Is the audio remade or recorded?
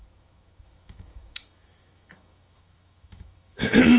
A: remade